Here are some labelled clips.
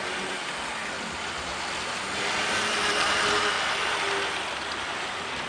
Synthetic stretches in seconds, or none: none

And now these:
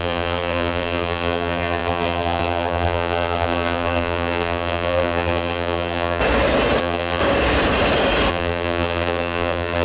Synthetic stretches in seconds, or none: 0.0-6.2 (vocoder, BigVGAN v2); 6.8-7.2; 8.3-9.8

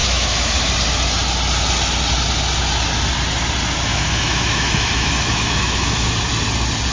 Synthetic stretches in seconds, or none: 0.0-0.7 (autoencoder, DAC-VAE); 3.9-6.1

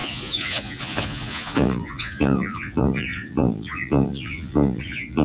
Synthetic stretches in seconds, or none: 0.0-5.2 (vocoder, Vocos)

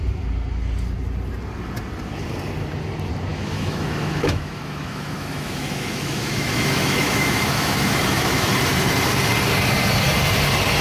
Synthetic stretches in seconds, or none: 3.3-8.5 (autoencoder, DAC-VAE)

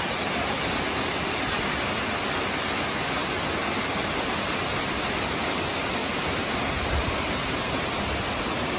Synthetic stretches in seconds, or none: 6.0-7.9 (vocoder, BigVGAN v2)